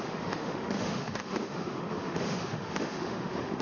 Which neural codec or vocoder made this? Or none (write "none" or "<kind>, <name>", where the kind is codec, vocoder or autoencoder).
autoencoder, DAC-VAE